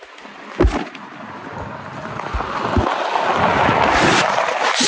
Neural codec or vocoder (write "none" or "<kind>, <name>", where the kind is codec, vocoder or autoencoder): none